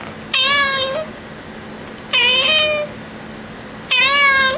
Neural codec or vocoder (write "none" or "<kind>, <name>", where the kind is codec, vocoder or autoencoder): none